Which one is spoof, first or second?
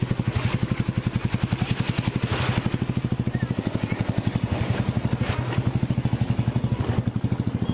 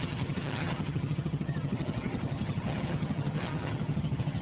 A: second